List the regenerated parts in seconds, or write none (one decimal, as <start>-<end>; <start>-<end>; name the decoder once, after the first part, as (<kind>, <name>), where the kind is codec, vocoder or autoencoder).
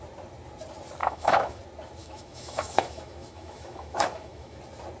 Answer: 1.0-1.6 (autoencoder, DAC-VAE); 2.0-4.6